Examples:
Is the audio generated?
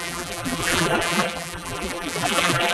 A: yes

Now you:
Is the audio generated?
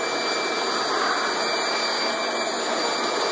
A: no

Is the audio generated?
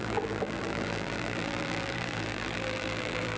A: yes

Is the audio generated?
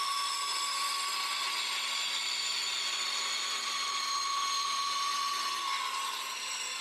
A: no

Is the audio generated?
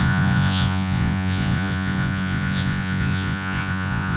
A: yes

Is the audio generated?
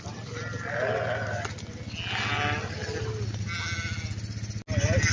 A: no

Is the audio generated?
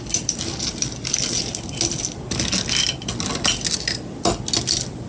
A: no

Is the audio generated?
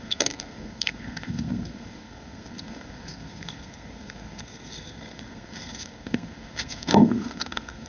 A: yes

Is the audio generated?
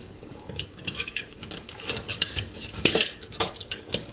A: yes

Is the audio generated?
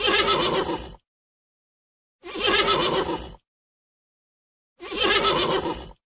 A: no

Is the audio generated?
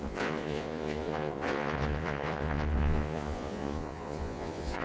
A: yes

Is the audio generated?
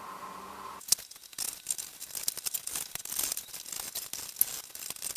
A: no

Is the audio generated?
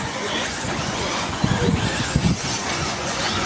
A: yes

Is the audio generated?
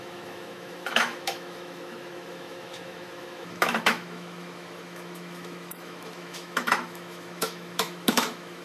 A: yes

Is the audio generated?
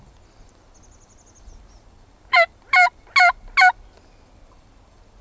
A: no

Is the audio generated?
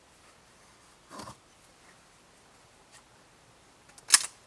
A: no